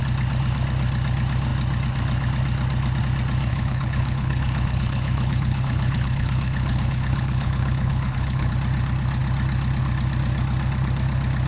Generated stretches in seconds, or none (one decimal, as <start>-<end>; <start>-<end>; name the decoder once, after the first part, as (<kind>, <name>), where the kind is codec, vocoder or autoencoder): 3.5-8.5 (codec, HILCodec)